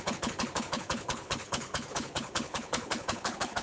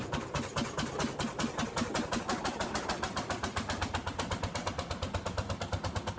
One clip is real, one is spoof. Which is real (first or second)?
second